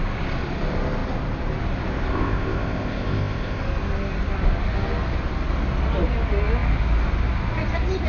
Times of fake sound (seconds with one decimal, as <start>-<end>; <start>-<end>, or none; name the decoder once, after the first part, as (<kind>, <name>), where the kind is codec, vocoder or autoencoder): 2.1-3.6 (codec, ZipCodec)